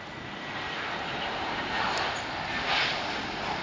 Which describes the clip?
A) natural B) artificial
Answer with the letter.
A